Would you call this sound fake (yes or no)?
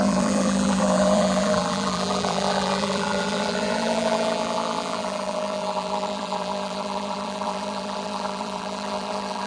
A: yes